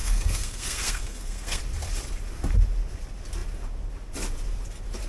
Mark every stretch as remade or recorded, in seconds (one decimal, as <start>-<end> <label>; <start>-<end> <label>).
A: 0.0-1.6 remade; 1.6-5.1 recorded